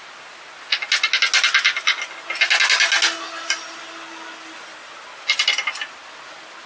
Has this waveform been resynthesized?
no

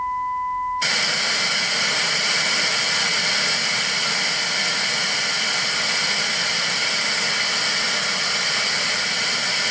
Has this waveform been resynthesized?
no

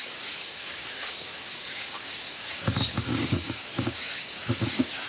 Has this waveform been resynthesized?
yes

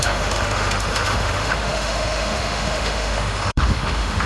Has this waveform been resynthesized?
yes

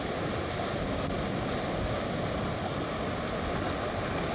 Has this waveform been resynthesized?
no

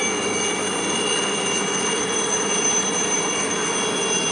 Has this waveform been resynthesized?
no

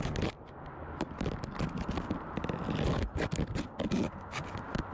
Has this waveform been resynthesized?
no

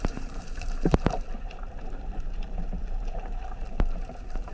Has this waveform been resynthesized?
yes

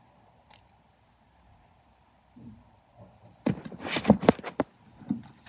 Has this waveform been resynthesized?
yes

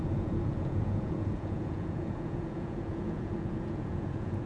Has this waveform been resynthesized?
yes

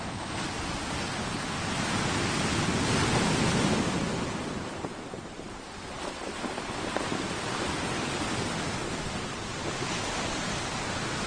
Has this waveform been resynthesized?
no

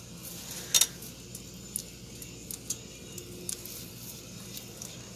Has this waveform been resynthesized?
no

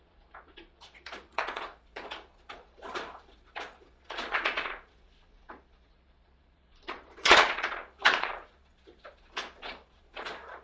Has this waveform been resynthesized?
yes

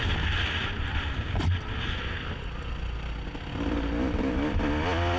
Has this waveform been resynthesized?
no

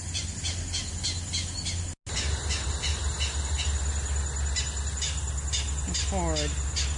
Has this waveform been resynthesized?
no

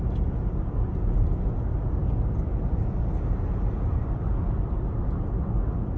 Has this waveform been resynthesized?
no